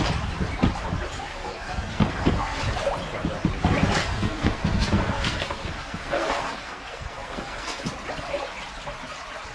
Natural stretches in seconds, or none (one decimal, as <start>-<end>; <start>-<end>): 0.0-1.3; 2.6-4.0; 7.8-9.5